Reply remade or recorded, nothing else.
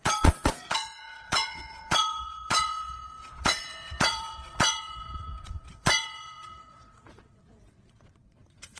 remade